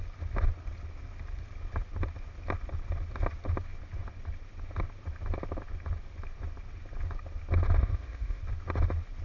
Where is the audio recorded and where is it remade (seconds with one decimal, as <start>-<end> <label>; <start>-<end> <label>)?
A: 0.0-7.8 recorded; 7.8-8.4 remade; 8.4-9.2 recorded